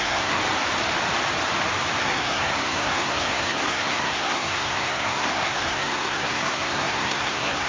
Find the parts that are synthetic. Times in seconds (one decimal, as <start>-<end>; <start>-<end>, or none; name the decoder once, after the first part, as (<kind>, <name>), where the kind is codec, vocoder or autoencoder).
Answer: 0.0-0.4 (codec, SNAC); 2.0-7.7